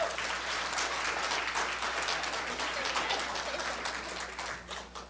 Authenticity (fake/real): real